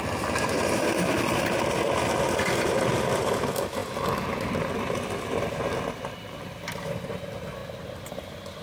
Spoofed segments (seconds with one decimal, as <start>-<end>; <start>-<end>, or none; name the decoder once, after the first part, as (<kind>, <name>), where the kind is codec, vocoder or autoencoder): none